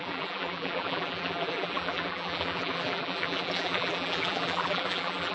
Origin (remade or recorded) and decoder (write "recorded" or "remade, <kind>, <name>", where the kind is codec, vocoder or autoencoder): remade, vocoder, BigVGAN v2